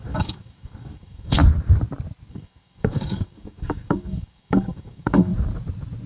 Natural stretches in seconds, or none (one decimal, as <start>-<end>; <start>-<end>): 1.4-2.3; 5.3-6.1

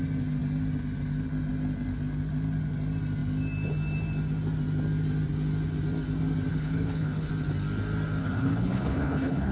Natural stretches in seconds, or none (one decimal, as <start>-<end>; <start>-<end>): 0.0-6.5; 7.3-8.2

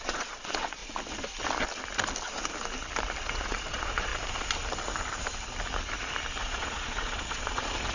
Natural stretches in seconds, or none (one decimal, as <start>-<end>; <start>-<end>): 0.8-3.2; 4.1-6.4